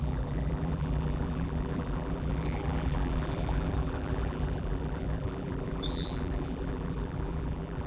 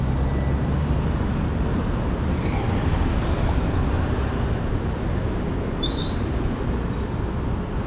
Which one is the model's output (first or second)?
first